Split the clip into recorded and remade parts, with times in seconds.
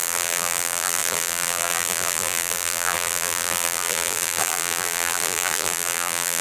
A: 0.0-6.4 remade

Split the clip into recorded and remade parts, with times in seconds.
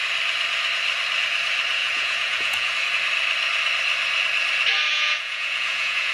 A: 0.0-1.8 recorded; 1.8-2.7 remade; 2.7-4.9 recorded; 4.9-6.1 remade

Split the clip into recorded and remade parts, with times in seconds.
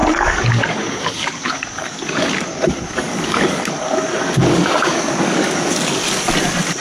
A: 0.0-6.0 remade; 6.0-6.8 recorded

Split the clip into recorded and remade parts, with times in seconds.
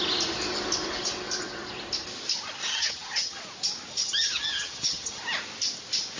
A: 0.0-2.7 recorded; 2.7-3.4 remade; 3.4-3.9 recorded; 3.9-5.2 remade; 5.2-6.2 recorded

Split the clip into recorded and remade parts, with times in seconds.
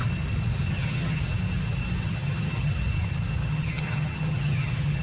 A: 0.0-0.7 recorded; 0.7-1.2 remade; 1.2-2.0 recorded; 2.0-2.7 remade; 2.7-3.4 recorded; 3.4-5.0 remade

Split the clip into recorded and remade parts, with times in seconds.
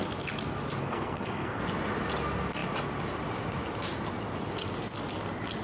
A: 0.0-0.8 recorded; 0.8-1.6 remade; 1.6-5.6 recorded